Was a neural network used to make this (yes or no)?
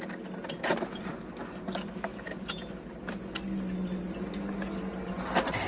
no